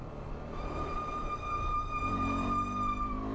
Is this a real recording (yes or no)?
no